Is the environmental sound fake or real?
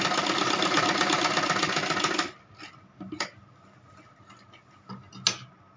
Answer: real